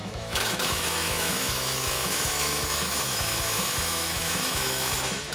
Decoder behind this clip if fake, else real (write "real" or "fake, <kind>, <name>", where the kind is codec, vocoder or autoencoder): fake, autoencoder, DAC-VAE